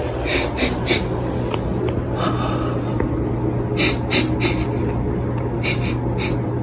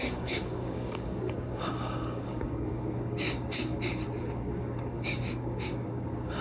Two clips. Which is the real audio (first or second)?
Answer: first